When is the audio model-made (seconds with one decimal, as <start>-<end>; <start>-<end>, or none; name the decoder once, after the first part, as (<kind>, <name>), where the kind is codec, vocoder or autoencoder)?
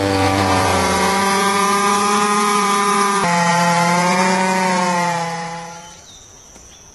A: 0.0-6.9 (vocoder, Vocos)